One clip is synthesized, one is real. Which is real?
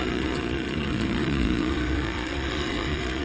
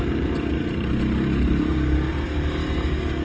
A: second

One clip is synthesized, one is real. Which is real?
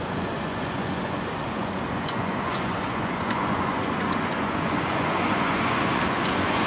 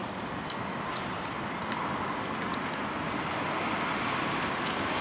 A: second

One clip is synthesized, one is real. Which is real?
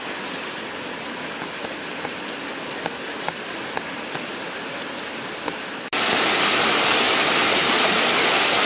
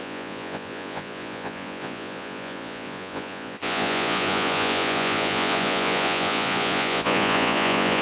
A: first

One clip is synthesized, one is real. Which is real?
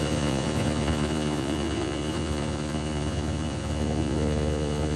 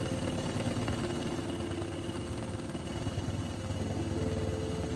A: second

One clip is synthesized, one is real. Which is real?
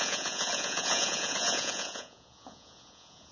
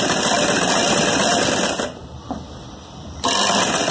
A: second